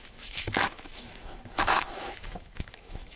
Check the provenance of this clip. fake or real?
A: fake